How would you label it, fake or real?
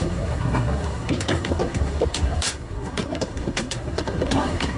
fake